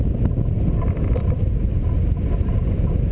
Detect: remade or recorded recorded